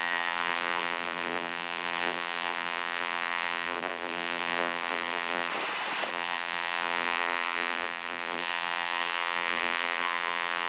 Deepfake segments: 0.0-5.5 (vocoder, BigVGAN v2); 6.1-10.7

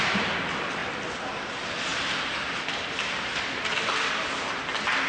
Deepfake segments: 0.8-1.5 (vocoder, BigVGAN v2); 1.9-4.1

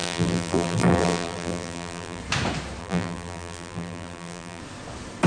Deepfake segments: 0.0-2.2 (vocoder, BigVGAN v2); 2.8-4.6

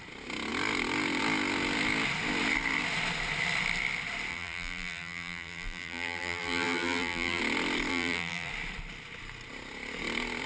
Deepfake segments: 4.3-7.4 (vocoder, BigVGAN v2); 7.9-8.5

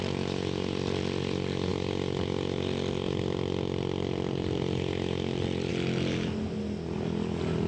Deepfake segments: none

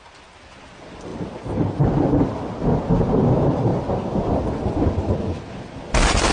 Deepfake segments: none

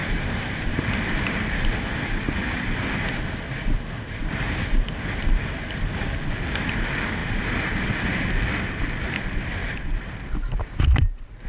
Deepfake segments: 0.0-0.9 (vocoder, BigVGAN v2); 7.2-7.9; 9.6-10.2